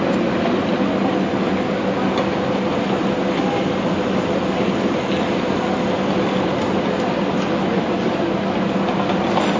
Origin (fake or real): real